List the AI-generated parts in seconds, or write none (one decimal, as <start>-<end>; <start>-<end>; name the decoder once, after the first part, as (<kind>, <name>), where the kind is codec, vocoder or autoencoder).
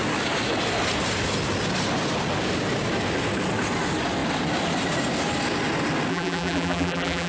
6.1-7.3 (vocoder, BigVGAN v2)